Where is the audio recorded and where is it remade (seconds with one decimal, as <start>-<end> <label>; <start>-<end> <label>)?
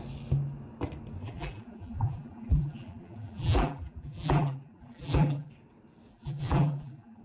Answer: 0.0-1.2 recorded; 1.2-5.5 remade; 5.5-6.1 recorded; 6.1-7.2 remade